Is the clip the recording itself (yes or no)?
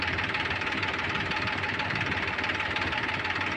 no